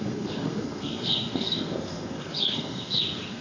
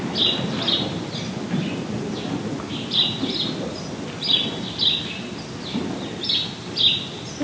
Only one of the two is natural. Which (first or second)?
second